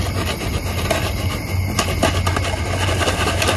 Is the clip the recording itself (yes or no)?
yes